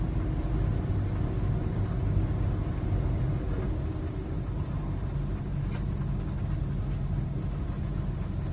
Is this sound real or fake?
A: real